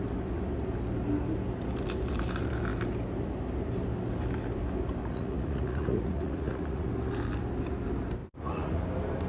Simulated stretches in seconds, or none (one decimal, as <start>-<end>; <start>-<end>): 5.0-6.9; 8.2-8.8